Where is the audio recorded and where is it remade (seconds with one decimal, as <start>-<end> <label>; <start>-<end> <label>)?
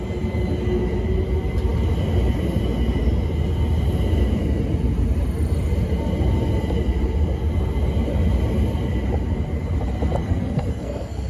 0.0-10.2 recorded; 10.2-11.3 remade